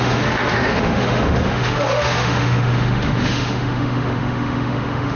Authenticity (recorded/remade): remade